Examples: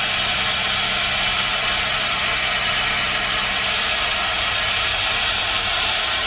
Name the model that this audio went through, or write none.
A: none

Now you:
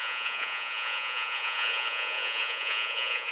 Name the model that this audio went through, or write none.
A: vocoder, Vocos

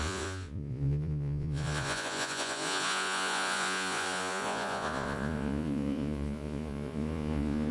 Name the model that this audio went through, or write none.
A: vocoder, Vocos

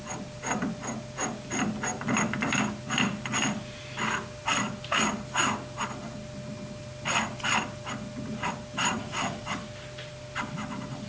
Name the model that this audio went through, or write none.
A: none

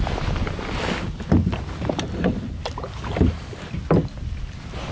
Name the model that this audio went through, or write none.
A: none